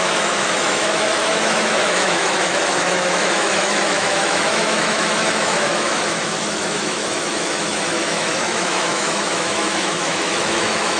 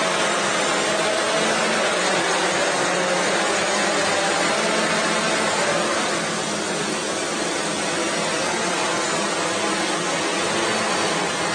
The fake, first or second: first